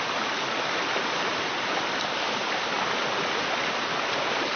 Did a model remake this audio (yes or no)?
no